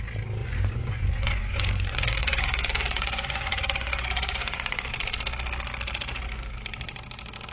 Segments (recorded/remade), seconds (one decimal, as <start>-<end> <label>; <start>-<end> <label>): 0.0-0.4 recorded; 0.4-4.9 remade; 4.9-7.5 recorded